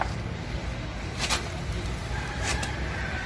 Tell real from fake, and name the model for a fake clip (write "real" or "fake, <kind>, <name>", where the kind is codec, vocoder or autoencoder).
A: real